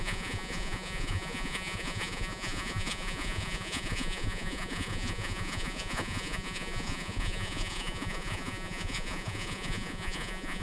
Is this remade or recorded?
remade